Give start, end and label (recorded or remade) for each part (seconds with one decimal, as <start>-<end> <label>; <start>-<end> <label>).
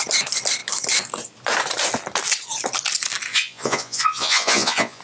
0.0-3.3 recorded; 3.3-5.0 remade